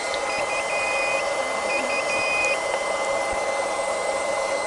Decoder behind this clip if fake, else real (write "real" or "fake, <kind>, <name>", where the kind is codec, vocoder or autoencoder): fake, vocoder, BigVGAN v2